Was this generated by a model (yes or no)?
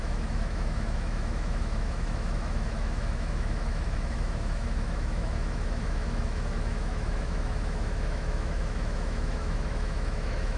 yes